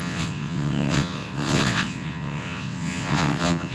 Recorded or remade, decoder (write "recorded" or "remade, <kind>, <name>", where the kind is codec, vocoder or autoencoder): remade, vocoder, WaveNeXt